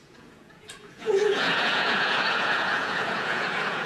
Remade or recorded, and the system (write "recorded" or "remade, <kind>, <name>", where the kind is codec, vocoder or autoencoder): remade, vocoder, Vocos